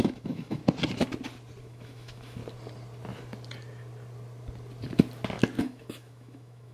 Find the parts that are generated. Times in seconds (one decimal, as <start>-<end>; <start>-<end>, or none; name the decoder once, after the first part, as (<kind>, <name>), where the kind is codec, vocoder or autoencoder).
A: 0.0-0.6 (autoencoder, DAC-VAE); 1.6-2.4; 5.6-6.7